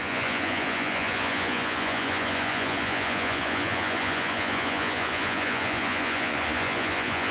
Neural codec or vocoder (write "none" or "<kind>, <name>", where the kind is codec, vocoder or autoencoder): vocoder, Vocos